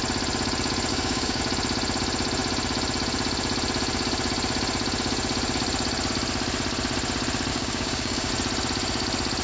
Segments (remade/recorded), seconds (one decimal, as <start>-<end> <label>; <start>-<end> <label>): 0.0-0.9 recorded; 0.9-1.4 remade; 1.4-7.5 recorded; 7.5-8.3 remade; 8.3-9.4 recorded